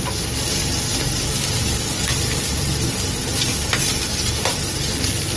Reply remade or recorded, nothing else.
recorded